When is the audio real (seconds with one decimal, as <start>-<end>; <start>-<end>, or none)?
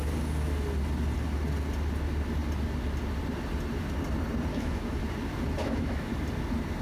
0.0-4.5; 5.0-5.6; 6.1-6.8